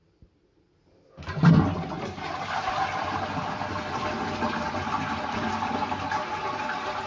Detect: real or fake real